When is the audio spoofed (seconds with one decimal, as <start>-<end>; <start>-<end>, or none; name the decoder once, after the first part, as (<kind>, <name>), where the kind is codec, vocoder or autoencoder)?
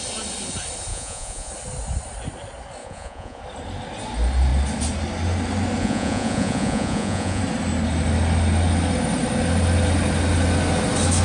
0.9-1.5 (vocoder, Vocos); 2.8-3.4; 5.8-7.4